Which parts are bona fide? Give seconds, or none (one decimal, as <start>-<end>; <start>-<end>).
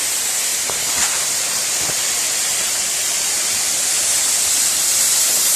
0.0-0.5; 3.6-5.6